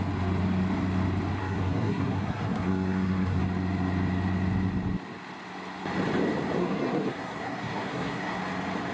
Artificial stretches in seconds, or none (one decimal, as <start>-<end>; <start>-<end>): 1.4-3.4; 6.6-8.4